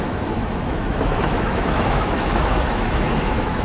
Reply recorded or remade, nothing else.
remade